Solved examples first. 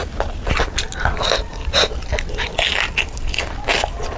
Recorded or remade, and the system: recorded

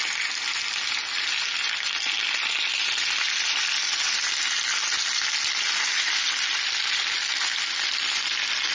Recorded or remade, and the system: recorded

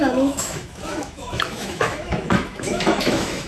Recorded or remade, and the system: remade, autoencoder, DAC-VAE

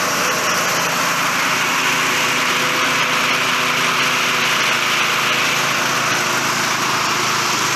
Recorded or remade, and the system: recorded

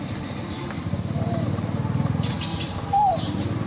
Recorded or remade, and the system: remade, vocoder, BigVGAN v2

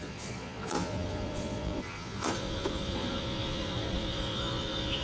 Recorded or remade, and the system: remade, vocoder, Vocos